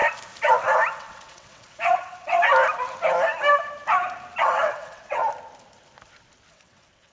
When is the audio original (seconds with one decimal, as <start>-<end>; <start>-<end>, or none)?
0.0-0.9; 2.5-4.4; 5.2-6.5